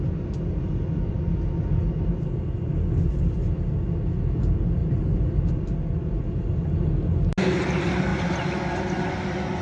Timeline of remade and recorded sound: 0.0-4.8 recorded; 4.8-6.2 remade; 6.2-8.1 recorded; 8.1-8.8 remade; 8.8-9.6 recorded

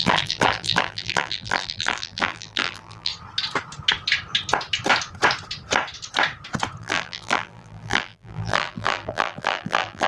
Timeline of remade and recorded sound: 0.0-3.1 remade; 3.1-6.8 recorded; 6.8-10.1 remade

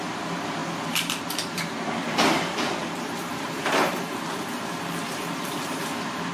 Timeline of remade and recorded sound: 0.0-6.3 remade

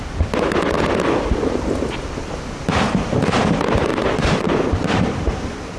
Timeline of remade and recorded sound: 0.0-3.9 recorded; 3.9-5.8 remade

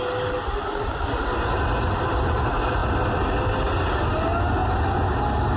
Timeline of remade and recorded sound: 0.0-5.6 recorded

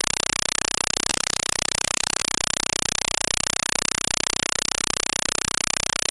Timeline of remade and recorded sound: 0.0-1.1 recorded; 1.1-2.2 remade; 2.2-6.1 recorded

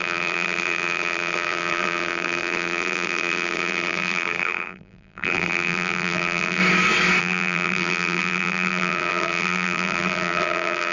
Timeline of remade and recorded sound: 0.0-6.6 remade; 6.6-7.2 recorded; 7.2-10.9 remade